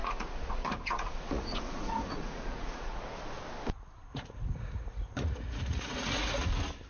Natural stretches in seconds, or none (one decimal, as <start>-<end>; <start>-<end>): 3.0-4.1; 6.5-6.9